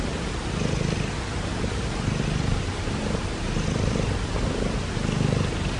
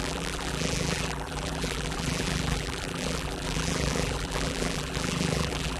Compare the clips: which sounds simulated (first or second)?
second